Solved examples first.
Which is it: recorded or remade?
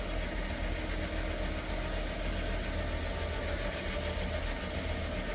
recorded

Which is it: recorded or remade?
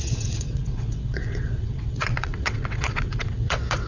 remade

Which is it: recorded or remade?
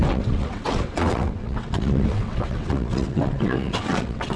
remade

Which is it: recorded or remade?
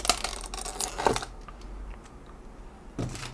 recorded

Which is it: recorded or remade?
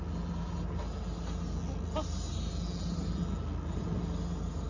recorded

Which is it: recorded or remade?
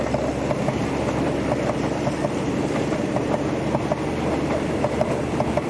recorded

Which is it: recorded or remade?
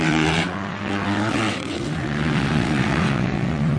remade